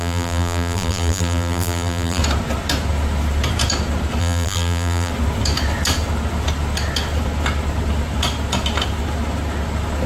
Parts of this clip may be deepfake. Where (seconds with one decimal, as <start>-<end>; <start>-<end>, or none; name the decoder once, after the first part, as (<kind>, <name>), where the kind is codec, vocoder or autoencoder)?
0.0-2.2 (vocoder, BigVGAN v2); 4.2-5.1